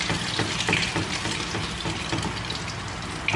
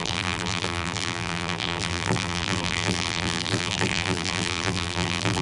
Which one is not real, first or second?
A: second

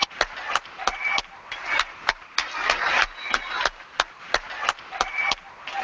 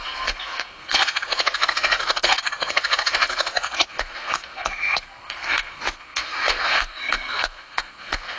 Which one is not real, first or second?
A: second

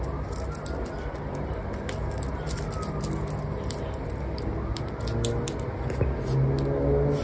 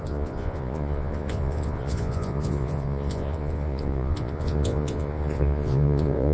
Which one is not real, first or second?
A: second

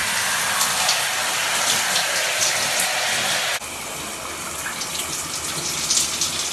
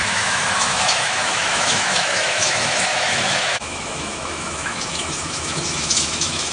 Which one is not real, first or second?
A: second